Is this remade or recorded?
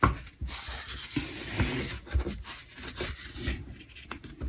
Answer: recorded